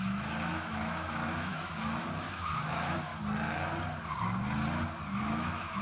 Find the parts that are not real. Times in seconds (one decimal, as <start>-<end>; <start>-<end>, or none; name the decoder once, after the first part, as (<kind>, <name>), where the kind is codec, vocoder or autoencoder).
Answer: 0.0-3.1 (autoencoder, DAC-VAE); 5.2-5.8